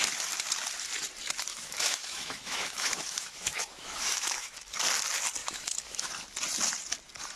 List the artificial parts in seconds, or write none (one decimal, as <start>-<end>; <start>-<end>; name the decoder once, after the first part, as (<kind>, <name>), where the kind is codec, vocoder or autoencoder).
1.5-4.7 (autoencoder, DAC-VAE); 5.4-6.1